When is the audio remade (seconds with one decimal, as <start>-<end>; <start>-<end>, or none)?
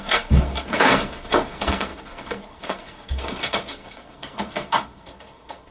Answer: 0.0-5.7